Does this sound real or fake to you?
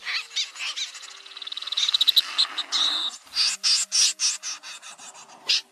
real